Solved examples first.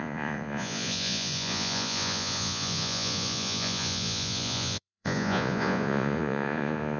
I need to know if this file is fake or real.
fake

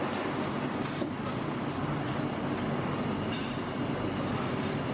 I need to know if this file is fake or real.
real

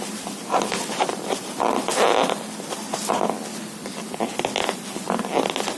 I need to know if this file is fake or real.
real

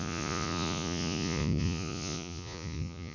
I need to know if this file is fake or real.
fake